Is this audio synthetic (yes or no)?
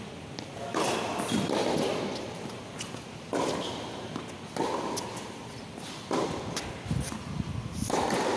no